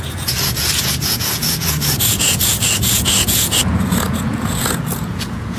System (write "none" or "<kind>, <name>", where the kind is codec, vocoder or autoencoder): vocoder, Vocos